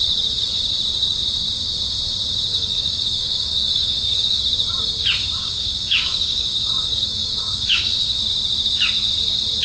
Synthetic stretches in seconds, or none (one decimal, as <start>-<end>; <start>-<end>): 2.5-4.4; 5.4-8.2